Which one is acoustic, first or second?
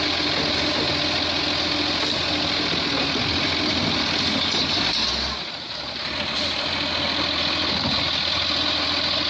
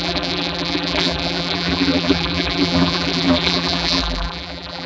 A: first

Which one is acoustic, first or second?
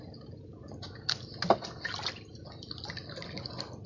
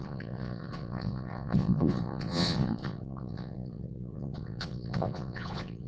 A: first